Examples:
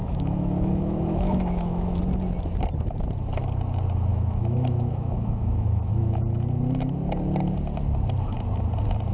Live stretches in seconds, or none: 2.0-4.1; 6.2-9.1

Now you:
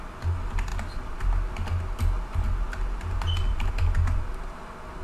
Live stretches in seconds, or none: 0.0-5.0